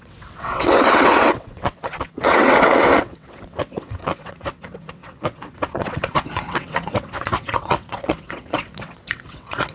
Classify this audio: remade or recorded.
remade